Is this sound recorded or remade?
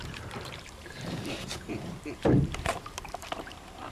remade